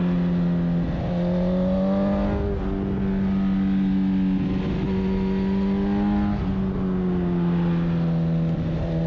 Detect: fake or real real